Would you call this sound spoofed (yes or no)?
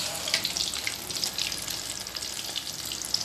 no